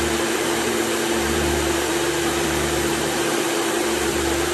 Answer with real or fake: fake